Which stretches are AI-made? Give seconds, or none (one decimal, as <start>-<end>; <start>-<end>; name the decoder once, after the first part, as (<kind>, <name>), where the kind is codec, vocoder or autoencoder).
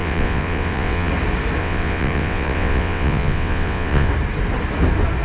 0.0-1.1 (vocoder, WaveNeXt); 1.6-4.1